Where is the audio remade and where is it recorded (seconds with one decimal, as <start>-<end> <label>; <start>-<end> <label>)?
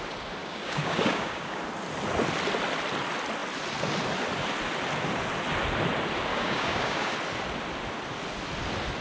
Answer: 0.0-0.4 recorded; 0.4-1.6 remade; 1.6-6.3 recorded; 6.3-7.1 remade; 7.1-9.0 recorded